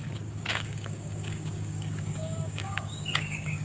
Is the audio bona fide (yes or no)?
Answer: no